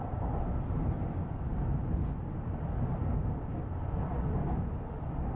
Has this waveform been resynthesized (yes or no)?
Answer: no